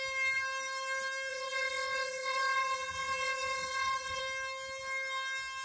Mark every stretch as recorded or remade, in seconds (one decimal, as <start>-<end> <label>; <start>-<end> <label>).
0.0-1.3 recorded; 1.3-4.2 remade; 4.2-5.6 recorded